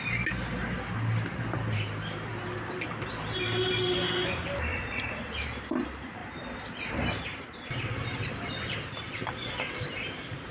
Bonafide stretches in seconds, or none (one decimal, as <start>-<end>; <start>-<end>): 0.0-4.7; 5.2-10.5